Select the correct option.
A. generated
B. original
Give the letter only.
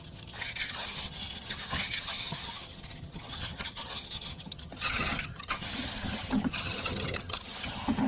A